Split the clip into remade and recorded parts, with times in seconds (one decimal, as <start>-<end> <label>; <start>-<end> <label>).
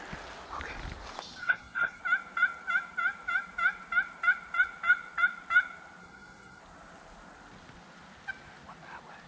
0.0-1.4 recorded; 1.4-2.0 remade; 2.0-6.0 recorded; 6.0-6.6 remade; 6.6-9.3 recorded